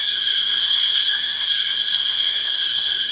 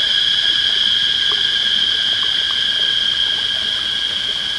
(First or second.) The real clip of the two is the second